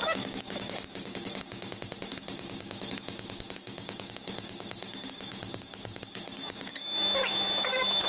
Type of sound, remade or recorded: remade